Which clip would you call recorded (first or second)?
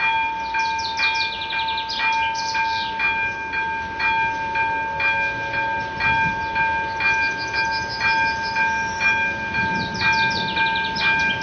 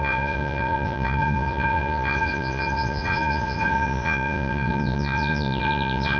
first